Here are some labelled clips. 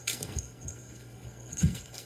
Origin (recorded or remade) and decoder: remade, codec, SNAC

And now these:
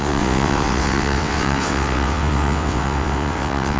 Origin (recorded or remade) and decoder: remade, vocoder, WaveNeXt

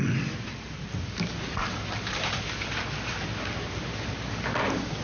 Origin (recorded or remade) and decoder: recorded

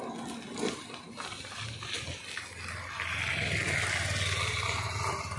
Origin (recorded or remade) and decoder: recorded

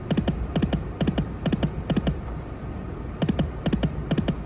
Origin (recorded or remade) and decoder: recorded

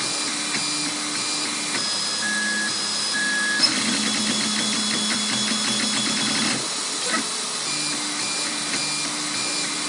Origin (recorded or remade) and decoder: recorded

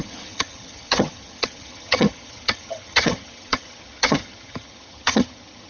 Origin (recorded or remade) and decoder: remade, vocoder, HiFi-GAN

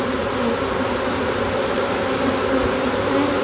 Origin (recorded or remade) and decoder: recorded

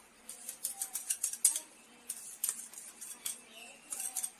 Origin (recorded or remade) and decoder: recorded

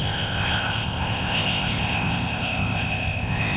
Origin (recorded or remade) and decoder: remade, codec, ZipCodec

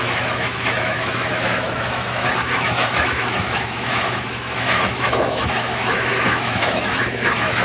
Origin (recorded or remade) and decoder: remade, autoencoder, DAC-VAE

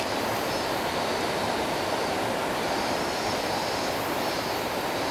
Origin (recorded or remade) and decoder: recorded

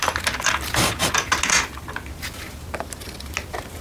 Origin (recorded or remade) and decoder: recorded